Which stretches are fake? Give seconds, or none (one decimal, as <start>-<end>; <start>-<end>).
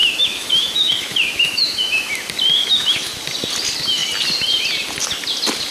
0.0-2.1; 2.6-3.2